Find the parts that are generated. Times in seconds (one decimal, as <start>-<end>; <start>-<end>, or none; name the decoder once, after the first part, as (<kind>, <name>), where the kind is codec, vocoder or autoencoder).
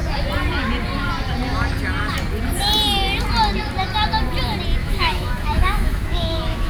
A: 4.8-6.7 (autoencoder, DAC-VAE)